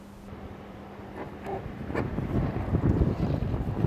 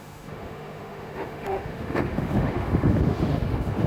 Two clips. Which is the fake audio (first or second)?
second